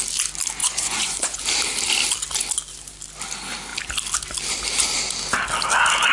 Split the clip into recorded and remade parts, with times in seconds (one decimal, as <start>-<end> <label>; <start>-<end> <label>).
0.0-0.6 recorded; 0.6-1.4 remade; 1.4-6.1 recorded